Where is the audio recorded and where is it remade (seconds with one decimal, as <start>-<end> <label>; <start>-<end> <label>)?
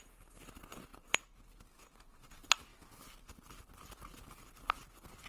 0.0-5.3 recorded